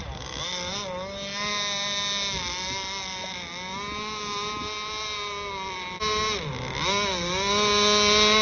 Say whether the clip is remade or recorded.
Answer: recorded